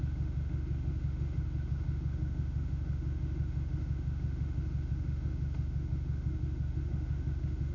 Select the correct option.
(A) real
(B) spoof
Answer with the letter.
B